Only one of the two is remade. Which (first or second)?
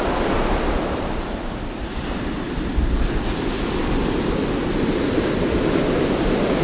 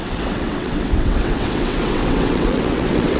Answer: second